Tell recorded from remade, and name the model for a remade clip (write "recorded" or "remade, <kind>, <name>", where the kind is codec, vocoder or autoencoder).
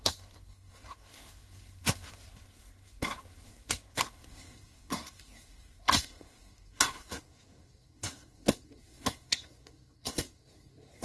remade, codec, SNAC